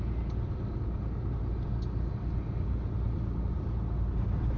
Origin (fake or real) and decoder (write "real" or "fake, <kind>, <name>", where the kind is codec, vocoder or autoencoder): real